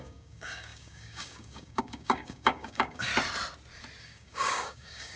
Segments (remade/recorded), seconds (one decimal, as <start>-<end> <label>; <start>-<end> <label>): 0.0-3.1 remade; 3.1-4.0 recorded; 4.0-5.2 remade